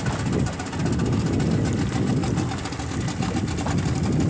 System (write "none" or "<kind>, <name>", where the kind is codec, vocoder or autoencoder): none